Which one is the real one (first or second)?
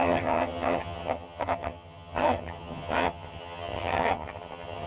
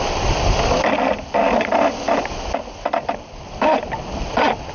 second